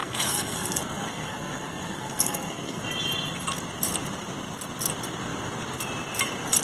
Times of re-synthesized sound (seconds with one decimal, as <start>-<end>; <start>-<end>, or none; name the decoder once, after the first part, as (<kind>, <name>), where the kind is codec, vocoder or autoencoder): 0.0-2.8 (codec, SNAC)